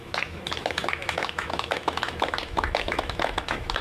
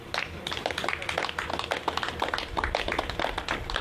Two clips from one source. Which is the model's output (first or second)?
first